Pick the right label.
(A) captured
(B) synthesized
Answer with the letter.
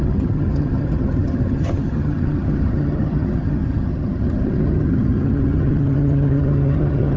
B